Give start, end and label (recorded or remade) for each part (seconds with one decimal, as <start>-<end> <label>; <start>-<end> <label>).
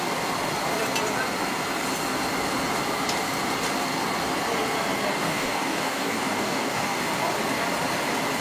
0.0-5.1 recorded; 5.1-7.0 remade; 7.0-8.4 recorded